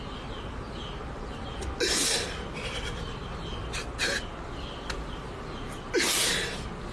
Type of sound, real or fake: real